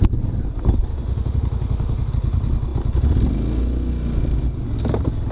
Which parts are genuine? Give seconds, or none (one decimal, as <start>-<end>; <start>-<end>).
0.0-0.9; 2.1-5.3

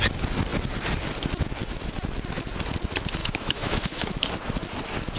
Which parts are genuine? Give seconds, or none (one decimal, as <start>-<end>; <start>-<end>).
0.0-3.2; 4.3-5.2

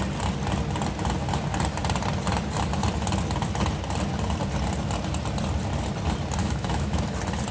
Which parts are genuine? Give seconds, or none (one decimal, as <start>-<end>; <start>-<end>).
0.0-6.4; 7.0-7.5

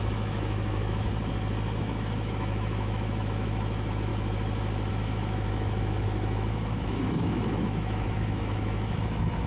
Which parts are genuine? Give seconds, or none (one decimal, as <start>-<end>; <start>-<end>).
1.1-1.8; 4.1-4.9

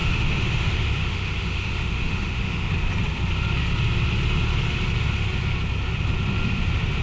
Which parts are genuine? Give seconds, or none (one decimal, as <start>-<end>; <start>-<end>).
2.7-7.0

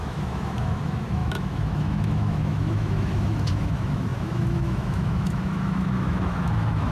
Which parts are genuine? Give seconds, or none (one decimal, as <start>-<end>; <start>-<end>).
none